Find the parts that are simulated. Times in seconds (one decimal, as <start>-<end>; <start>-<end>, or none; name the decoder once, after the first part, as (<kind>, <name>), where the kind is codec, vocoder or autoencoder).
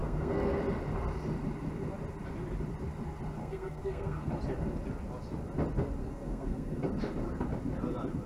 0.0-0.6 (codec, SNAC); 3.4-4.3; 6.0-6.8